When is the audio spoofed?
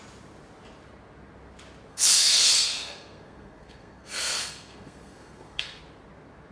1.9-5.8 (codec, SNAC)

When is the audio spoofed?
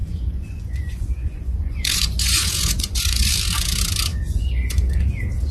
0.0-3.3 (vocoder, Vocos); 4.1-4.9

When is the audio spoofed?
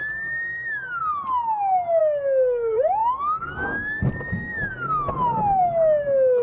none